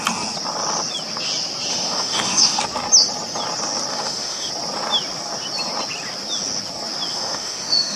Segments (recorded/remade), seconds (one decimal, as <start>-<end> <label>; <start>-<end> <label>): 0.0-1.7 recorded; 1.7-2.6 remade; 2.6-3.9 recorded; 3.9-4.5 remade; 4.5-7.1 recorded; 7.1-8.0 remade